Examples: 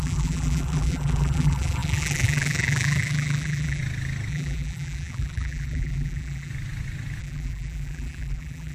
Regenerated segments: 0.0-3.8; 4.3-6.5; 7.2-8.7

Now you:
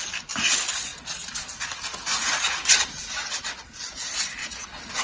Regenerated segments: none

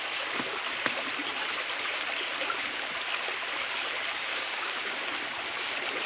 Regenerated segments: 4.3-5.1

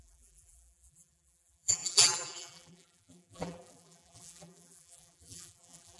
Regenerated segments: 0.0-6.0

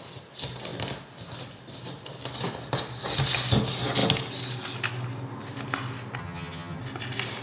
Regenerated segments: 6.2-6.8

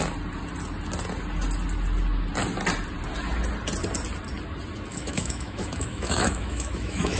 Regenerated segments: 4.9-7.2

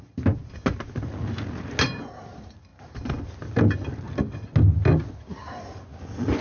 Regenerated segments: none